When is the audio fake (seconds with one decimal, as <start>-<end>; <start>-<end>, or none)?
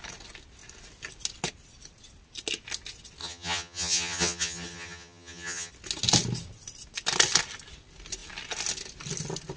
3.2-5.7